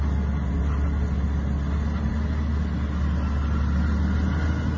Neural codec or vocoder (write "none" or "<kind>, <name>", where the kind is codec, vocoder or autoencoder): none